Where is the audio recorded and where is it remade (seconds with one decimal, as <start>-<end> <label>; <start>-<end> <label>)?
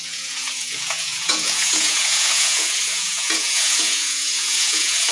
0.0-5.1 remade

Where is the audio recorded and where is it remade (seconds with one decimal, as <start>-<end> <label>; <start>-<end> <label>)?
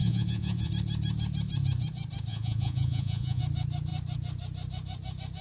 0.0-0.7 remade; 0.7-2.3 recorded; 2.3-3.4 remade; 3.4-5.4 recorded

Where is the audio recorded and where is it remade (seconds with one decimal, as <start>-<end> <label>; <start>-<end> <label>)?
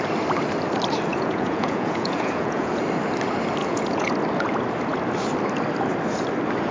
0.0-1.1 recorded; 1.1-2.7 remade; 2.7-3.6 recorded; 3.6-4.1 remade; 4.1-6.7 recorded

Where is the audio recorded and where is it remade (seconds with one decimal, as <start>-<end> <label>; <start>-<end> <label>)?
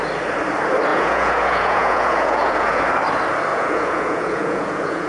0.0-0.9 recorded; 0.9-2.8 remade; 2.8-3.5 recorded; 3.5-5.1 remade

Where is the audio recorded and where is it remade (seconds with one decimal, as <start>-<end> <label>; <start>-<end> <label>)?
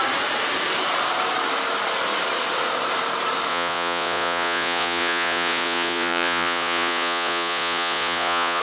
0.0-3.5 recorded; 3.5-8.6 remade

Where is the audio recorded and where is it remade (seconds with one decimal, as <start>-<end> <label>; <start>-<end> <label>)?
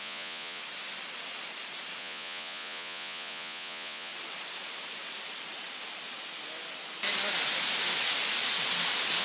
0.0-0.6 remade; 0.6-2.0 recorded; 2.0-4.1 remade; 4.1-9.2 recorded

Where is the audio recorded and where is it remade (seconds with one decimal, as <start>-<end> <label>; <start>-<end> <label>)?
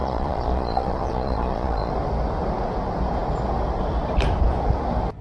0.0-1.9 remade; 1.9-5.2 recorded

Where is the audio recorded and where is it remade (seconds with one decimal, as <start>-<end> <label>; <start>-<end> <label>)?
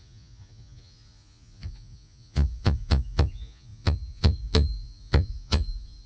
0.0-6.1 remade